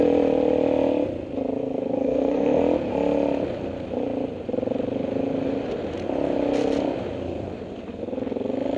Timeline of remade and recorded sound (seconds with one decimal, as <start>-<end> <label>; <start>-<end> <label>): 0.0-1.6 recorded; 1.6-2.6 remade; 2.6-8.8 recorded